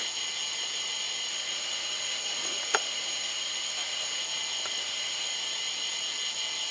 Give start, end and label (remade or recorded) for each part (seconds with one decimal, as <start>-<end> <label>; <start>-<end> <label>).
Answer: 0.0-1.3 recorded; 1.3-4.2 remade; 4.2-4.8 recorded; 4.8-5.3 remade; 5.3-6.7 recorded